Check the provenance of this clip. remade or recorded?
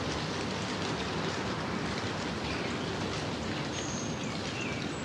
recorded